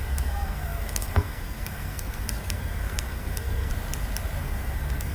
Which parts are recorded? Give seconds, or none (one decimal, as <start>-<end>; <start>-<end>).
3.7-4.4